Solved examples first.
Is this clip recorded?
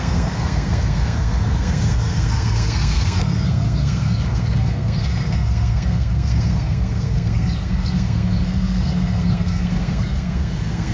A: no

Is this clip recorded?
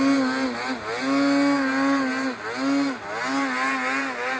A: yes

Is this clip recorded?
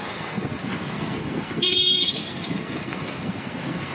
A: no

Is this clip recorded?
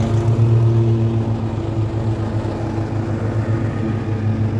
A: yes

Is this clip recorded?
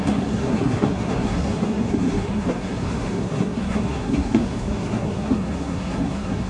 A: no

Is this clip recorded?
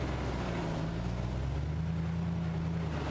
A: yes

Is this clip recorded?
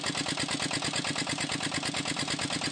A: yes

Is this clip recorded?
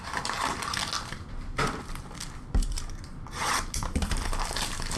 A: yes